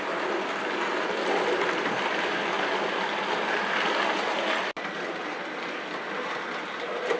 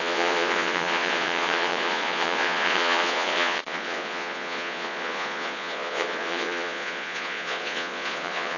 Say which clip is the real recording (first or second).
first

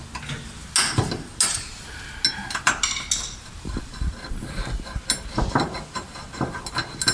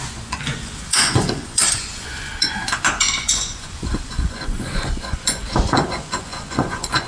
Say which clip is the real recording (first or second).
first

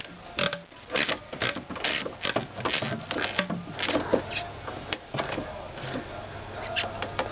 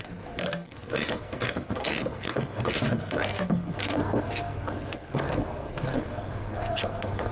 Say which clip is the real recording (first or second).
first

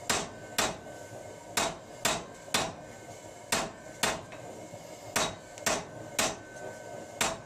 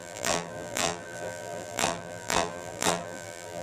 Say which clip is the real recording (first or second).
first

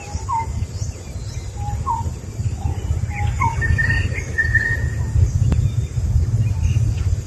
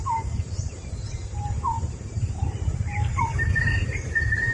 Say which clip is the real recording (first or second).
first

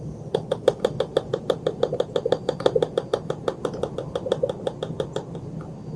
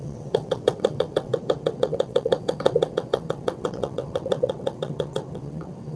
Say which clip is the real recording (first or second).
first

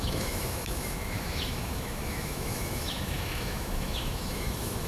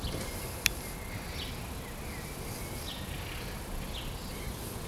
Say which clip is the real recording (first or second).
second